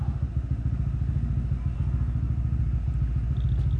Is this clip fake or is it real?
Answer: real